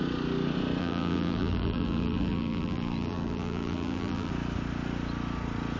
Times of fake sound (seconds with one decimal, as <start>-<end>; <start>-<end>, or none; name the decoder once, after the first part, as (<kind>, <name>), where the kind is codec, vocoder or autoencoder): 0.8-4.3 (vocoder, BigVGAN v2)